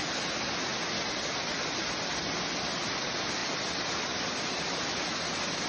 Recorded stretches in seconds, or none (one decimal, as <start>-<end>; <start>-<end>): 0.0-5.7